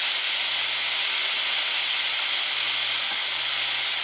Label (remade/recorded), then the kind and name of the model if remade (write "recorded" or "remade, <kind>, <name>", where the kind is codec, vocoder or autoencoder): recorded